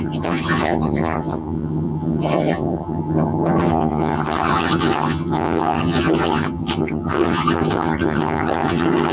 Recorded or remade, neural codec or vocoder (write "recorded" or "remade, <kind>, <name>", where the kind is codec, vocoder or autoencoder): remade, vocoder, HiFi-GAN